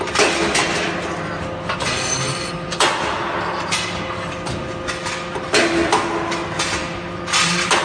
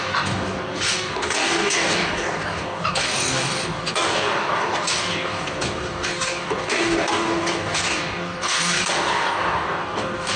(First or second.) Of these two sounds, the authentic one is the first